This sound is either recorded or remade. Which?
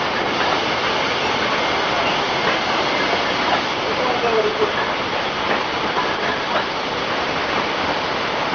recorded